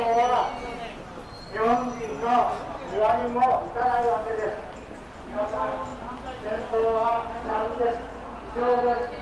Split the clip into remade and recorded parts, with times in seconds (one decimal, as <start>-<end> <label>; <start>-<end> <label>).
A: 0.0-9.2 recorded